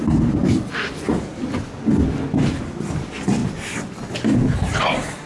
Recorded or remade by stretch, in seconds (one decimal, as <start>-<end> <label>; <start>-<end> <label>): 0.0-5.3 recorded